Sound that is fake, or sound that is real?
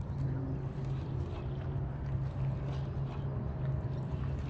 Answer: real